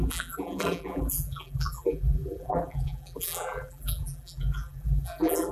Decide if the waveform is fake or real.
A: fake